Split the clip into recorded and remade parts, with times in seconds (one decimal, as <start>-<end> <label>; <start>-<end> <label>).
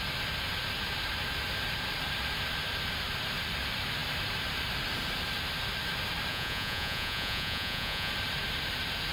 0.0-6.3 recorded; 6.3-8.1 remade; 8.1-9.1 recorded